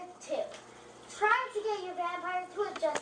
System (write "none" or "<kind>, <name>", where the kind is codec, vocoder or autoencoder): none